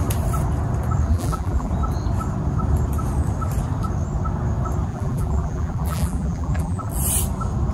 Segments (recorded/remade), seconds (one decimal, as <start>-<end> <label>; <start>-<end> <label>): 0.0-1.1 recorded; 1.1-1.7 remade; 1.7-4.9 recorded; 4.9-6.9 remade; 6.9-7.7 recorded